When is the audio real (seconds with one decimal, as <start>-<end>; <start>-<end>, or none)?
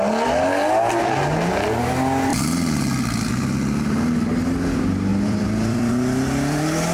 0.0-2.3; 3.3-5.1; 5.9-6.9